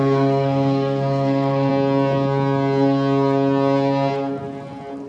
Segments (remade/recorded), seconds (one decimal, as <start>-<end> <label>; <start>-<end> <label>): 0.0-1.7 remade; 1.7-5.1 recorded